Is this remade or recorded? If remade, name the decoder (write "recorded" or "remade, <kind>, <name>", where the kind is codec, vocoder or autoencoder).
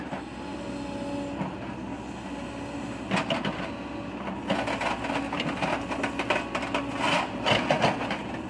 recorded